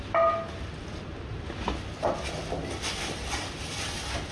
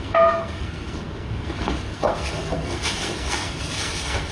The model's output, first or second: second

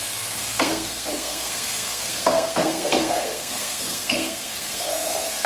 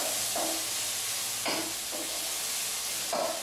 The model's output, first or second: first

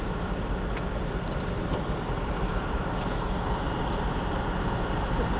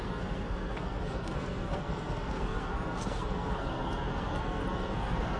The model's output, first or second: second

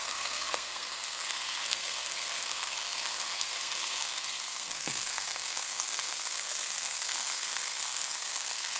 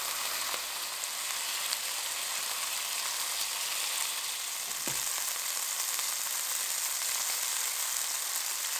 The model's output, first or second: first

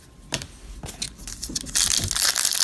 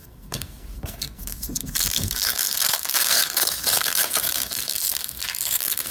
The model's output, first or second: second